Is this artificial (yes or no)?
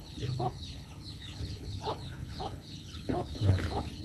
yes